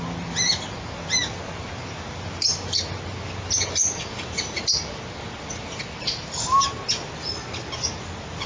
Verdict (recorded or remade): recorded